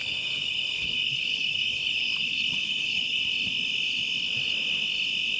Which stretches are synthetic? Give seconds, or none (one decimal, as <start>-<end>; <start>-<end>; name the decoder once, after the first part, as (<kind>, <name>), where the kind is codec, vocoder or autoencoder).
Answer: 0.0-3.2 (codec, HILCodec)